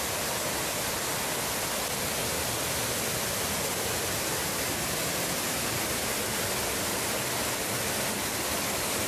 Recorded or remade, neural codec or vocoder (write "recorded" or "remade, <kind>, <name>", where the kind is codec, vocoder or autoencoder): recorded